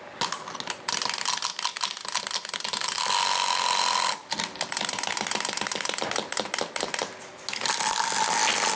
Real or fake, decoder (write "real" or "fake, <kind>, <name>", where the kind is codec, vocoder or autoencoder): real